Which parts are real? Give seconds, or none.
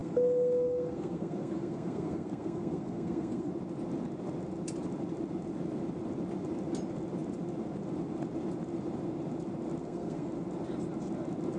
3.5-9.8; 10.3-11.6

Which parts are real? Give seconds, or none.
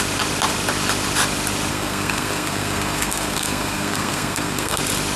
0.0-1.7; 4.8-5.2